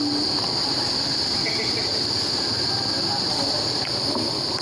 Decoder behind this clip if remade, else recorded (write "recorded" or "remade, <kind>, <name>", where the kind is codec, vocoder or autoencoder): recorded